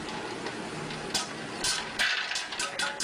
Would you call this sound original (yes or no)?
yes